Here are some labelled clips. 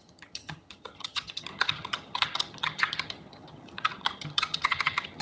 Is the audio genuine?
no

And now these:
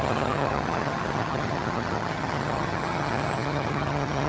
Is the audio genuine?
no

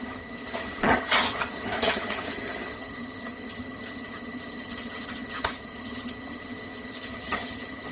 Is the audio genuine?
no